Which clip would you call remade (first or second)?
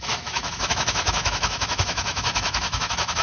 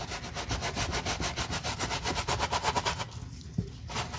first